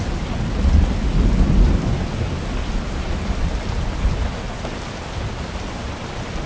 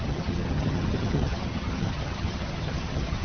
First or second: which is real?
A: first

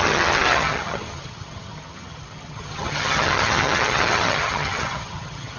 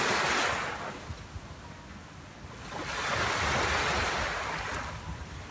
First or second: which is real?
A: second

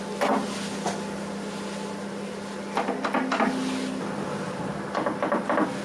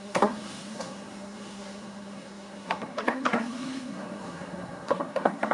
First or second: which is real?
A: first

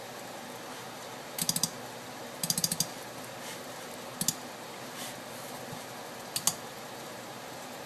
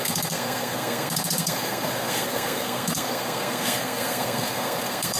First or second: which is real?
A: first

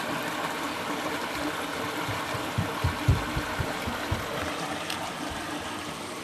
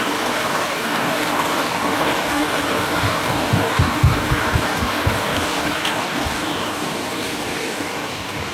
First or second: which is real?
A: first